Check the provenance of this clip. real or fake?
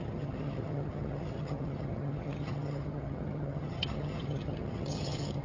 fake